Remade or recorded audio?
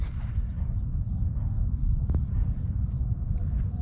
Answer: recorded